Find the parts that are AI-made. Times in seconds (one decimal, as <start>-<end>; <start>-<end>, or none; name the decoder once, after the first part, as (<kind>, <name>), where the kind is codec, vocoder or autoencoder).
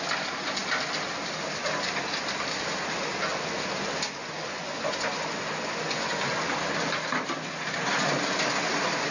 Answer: 4.2-6.1 (vocoder, Vocos)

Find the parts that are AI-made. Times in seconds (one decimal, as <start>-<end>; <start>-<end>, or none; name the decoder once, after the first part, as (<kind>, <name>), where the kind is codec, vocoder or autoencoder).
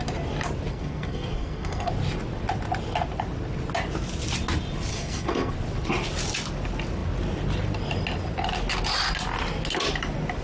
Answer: 0.7-1.9 (codec, SNAC); 4.9-5.5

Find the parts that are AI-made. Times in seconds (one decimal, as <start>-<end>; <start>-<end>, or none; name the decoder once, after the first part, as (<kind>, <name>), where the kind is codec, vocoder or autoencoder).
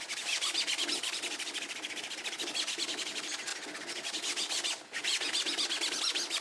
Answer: none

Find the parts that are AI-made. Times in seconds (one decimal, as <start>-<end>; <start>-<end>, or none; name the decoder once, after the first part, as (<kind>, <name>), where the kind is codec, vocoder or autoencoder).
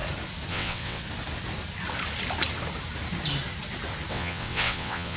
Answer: 0.5-1.0 (vocoder, WaveNeXt); 4.1-5.2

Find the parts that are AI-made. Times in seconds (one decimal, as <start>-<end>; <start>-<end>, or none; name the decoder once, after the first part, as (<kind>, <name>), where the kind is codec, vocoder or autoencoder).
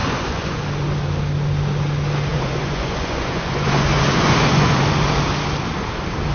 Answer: 0.0-0.6 (vocoder, Vocos); 2.3-4.8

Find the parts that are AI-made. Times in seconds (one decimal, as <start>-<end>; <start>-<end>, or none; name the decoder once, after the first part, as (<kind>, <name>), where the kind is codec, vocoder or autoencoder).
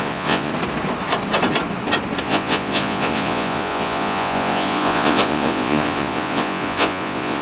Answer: 0.0-0.5 (vocoder, Vocos); 2.2-7.4